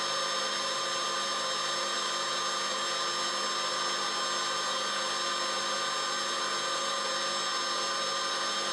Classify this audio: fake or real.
real